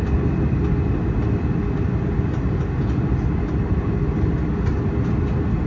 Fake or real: real